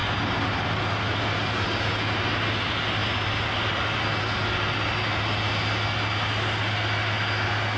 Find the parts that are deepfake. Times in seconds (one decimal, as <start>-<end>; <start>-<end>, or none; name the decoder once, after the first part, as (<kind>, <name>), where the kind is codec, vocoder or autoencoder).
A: none